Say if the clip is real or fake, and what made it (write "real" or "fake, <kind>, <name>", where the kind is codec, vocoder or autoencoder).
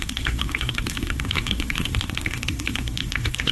fake, codec, SNAC